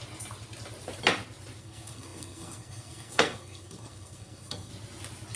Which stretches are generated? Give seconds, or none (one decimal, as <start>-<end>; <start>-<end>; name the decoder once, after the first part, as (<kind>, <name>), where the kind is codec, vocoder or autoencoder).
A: 1.6-4.7 (codec, SNAC)